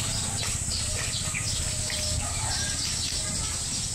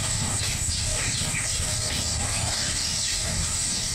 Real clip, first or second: first